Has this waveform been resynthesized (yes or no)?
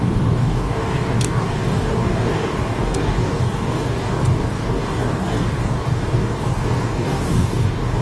yes